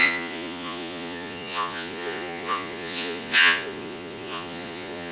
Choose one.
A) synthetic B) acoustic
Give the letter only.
A